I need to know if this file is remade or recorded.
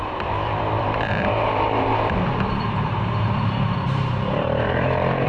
remade